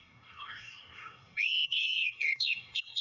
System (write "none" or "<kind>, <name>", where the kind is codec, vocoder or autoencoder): codec, SNAC